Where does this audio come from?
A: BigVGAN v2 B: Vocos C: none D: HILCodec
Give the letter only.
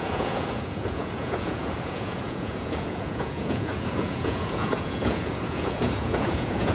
B